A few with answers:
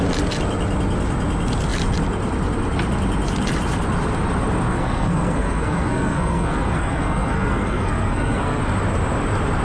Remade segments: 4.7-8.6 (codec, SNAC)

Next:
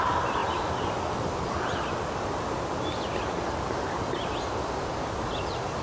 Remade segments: none

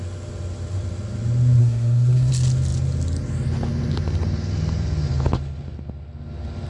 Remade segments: 1.6-2.3 (codec, SNAC)